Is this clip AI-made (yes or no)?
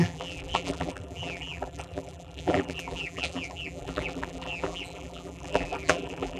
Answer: yes